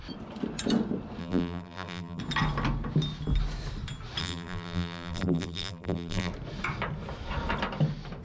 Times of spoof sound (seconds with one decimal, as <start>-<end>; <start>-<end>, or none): 1.2-2.2; 4.2-6.3